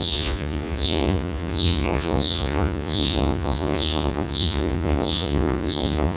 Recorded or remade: remade